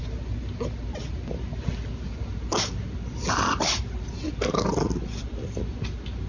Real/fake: real